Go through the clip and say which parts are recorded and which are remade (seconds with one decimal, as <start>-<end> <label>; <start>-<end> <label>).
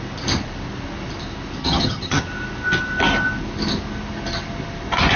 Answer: 0.0-1.6 recorded; 1.6-2.2 remade; 2.2-5.2 recorded